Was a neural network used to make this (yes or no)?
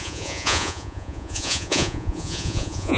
yes